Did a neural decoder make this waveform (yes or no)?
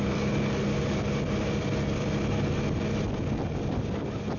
no